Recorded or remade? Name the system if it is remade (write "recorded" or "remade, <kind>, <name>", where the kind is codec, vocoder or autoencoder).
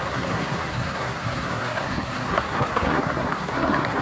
remade, codec, SNAC